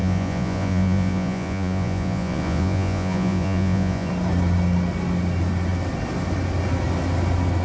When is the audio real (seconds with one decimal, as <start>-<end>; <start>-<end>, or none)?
4.1-7.6